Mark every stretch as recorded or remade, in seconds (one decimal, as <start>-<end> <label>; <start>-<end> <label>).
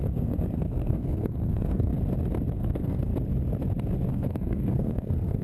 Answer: 0.0-1.9 remade; 1.9-2.5 recorded; 2.5-3.1 remade; 3.1-4.1 recorded; 4.1-5.4 remade